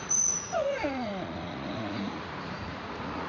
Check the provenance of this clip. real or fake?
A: fake